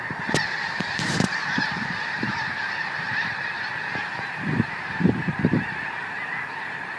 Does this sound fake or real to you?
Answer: fake